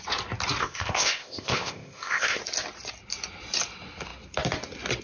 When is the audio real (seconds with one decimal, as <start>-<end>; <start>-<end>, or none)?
0.0-0.6; 2.4-5.0